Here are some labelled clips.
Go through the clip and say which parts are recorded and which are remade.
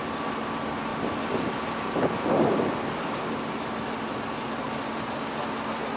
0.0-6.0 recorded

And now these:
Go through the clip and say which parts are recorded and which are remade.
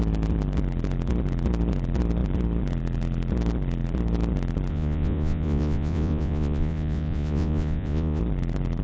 0.0-4.7 recorded; 4.7-8.2 remade; 8.2-8.8 recorded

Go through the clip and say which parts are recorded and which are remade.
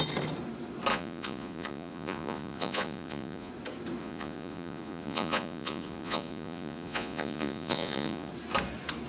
0.0-0.9 recorded; 0.9-3.5 remade; 3.5-4.0 recorded; 4.0-8.3 remade; 8.3-9.1 recorded